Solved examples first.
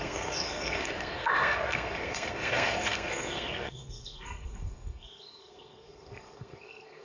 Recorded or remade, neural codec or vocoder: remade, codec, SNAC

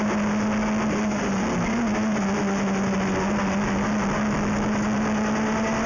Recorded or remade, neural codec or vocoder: recorded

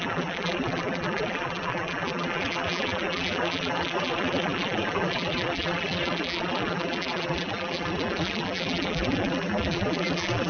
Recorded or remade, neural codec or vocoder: remade, vocoder, BigVGAN v2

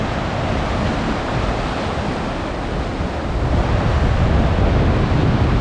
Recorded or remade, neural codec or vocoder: recorded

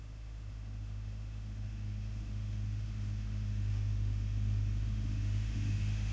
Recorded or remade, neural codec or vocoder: remade, autoencoder, DAC-VAE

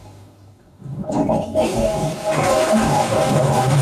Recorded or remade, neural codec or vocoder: remade, codec, DAC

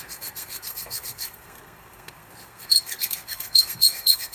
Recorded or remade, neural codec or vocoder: remade, codec, SNAC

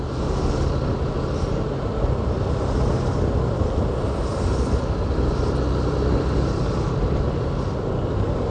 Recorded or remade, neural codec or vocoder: recorded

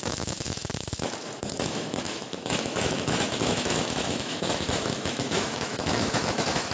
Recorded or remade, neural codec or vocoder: remade, autoencoder, DAC-VAE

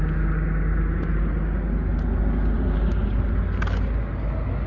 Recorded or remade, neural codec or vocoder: recorded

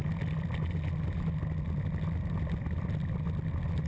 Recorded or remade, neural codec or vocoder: recorded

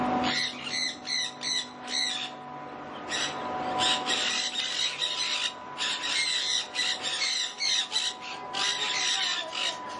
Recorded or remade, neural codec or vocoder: recorded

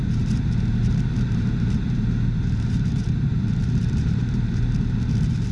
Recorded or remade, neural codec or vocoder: remade, vocoder, BigVGAN v2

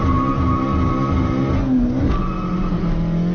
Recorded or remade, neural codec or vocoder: recorded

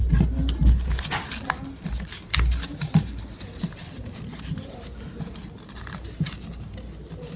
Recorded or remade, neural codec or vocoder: recorded